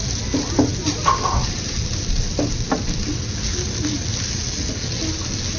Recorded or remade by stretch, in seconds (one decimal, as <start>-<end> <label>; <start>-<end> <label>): 0.0-5.6 recorded